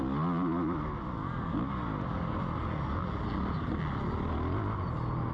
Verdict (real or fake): real